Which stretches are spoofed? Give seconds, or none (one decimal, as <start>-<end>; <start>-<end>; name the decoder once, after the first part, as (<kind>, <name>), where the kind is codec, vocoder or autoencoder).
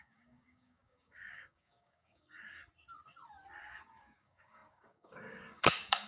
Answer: 0.0-2.6 (codec, DAC); 3.6-6.1